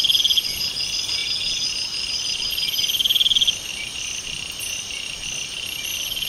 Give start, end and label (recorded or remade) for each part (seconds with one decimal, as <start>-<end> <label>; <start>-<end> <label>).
0.0-6.3 recorded